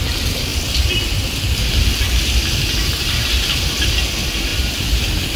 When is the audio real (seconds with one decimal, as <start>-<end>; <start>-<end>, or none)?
0.0-5.4